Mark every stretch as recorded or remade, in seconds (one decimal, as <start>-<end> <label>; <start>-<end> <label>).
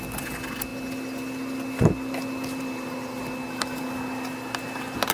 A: 0.0-5.1 recorded